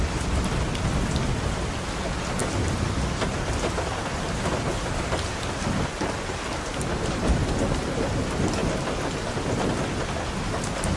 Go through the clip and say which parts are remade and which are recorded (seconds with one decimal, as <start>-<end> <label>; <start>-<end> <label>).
0.0-11.0 recorded

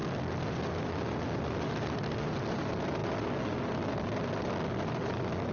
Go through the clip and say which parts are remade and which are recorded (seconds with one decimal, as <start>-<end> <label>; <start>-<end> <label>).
0.0-5.5 recorded

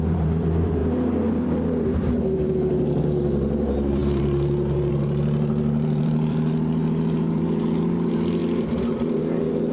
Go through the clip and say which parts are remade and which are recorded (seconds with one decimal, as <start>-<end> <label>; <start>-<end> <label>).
0.0-8.4 remade; 8.4-9.2 recorded; 9.2-9.7 remade

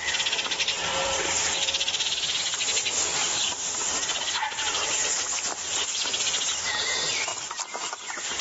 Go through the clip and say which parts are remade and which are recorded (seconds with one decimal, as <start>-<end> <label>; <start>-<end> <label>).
0.0-0.9 recorded; 0.9-2.4 remade; 2.4-3.4 recorded; 3.4-4.2 remade; 4.2-7.3 recorded; 7.3-7.9 remade; 7.9-8.4 recorded